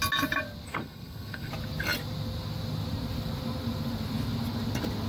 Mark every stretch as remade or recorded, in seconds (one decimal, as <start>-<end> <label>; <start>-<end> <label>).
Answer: 0.0-0.7 recorded; 0.7-1.5 remade; 1.5-5.1 recorded